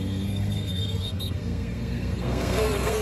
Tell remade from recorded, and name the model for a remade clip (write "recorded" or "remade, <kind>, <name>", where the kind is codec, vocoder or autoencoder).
remade, codec, SNAC